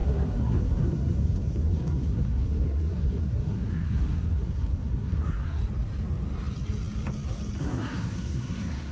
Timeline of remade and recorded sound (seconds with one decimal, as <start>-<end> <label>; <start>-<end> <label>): 0.0-5.6 remade; 5.6-7.6 recorded; 7.6-8.9 remade